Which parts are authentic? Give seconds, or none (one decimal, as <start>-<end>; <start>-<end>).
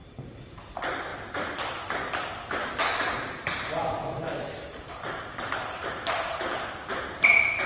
0.6-2.6; 6.4-7.7